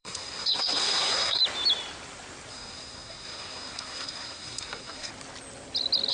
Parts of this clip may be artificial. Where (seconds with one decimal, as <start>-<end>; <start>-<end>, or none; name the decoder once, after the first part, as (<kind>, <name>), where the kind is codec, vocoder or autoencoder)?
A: 0.0-1.4 (codec, SNAC); 2.5-5.1